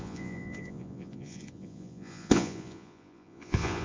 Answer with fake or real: fake